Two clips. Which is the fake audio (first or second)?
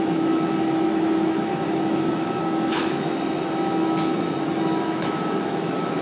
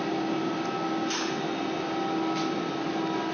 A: first